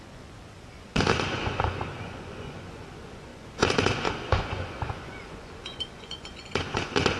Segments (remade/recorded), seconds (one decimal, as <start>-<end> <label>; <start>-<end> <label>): 0.0-7.2 remade